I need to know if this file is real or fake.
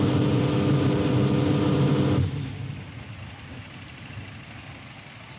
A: real